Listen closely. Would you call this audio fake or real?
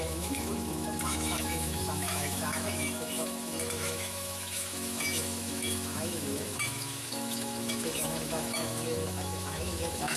fake